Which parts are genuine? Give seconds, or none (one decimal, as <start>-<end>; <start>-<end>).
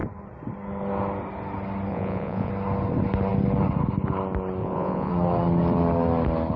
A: 0.0-1.9; 2.5-4.6; 5.1-6.6